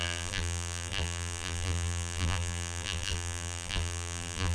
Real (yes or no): no